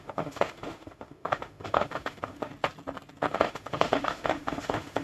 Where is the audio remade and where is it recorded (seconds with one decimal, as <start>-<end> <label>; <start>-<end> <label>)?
0.0-2.5 remade; 2.5-3.3 recorded; 3.3-5.0 remade